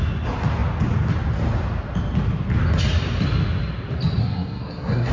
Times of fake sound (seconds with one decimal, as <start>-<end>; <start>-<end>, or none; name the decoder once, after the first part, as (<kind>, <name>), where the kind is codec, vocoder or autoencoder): 4.2-5.1 (codec, SNAC)